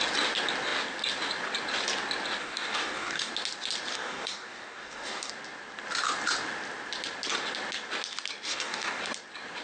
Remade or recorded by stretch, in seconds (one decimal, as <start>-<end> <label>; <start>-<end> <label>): 0.0-2.4 recorded; 2.4-3.3 remade; 3.3-3.9 recorded; 3.9-5.3 remade; 5.3-8.5 recorded; 8.5-9.0 remade; 9.0-9.6 recorded